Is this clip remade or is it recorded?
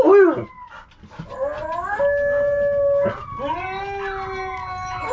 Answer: recorded